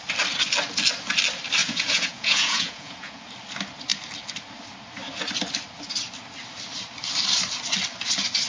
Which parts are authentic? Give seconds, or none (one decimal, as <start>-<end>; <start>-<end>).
0.0-1.6; 3.2-8.5